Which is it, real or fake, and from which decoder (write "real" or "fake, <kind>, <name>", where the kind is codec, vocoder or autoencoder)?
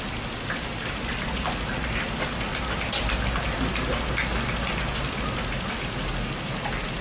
real